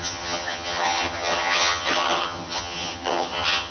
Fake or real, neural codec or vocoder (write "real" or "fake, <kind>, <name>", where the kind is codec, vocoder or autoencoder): fake, vocoder, HiFi-GAN